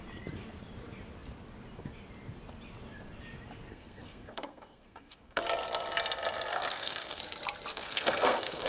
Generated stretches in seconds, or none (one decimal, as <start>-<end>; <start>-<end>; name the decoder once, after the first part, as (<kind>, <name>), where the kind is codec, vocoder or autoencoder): 3.7-5.4 (codec, SNAC); 6.5-7.2; 7.7-8.7